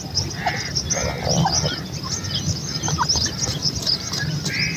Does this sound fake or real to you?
real